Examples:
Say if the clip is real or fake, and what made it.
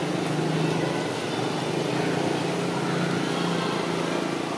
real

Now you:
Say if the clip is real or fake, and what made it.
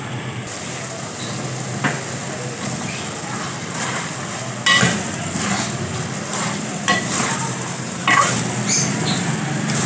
real